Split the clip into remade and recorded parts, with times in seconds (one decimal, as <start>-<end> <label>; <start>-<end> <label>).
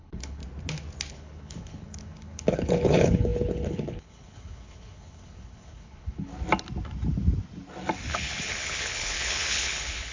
0.0-0.4 remade; 0.4-1.1 recorded; 1.1-6.3 remade; 6.3-8.1 recorded; 8.1-10.1 remade